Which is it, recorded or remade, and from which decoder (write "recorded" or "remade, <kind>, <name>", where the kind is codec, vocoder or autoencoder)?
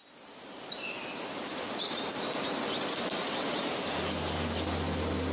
recorded